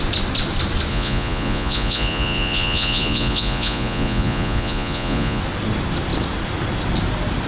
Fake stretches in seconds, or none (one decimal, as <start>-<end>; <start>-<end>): 0.9-5.4